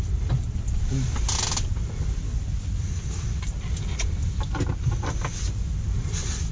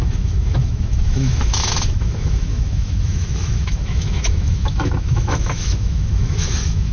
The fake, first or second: second